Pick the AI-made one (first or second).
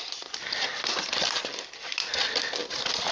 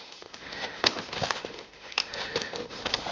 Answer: second